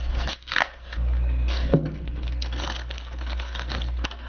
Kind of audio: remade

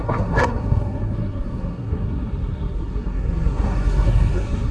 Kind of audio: remade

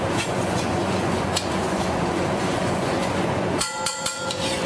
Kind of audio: remade